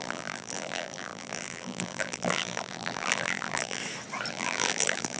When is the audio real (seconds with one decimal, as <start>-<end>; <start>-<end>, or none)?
3.8-4.3